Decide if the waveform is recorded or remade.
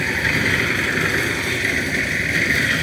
recorded